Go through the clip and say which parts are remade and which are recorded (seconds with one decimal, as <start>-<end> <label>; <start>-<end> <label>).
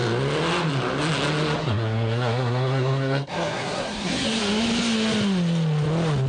0.0-1.6 recorded; 1.6-4.4 remade; 4.4-6.3 recorded